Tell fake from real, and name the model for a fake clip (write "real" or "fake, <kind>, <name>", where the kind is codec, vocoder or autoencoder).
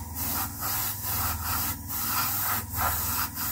real